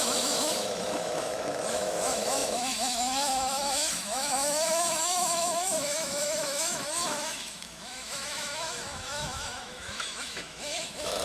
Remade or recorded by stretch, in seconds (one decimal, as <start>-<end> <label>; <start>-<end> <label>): 0.0-11.2 remade